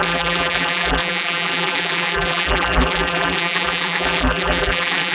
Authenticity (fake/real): fake